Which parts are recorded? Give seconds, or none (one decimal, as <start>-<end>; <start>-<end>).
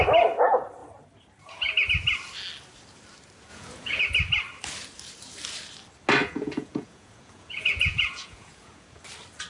0.0-3.5; 4.0-6.2; 9.0-9.5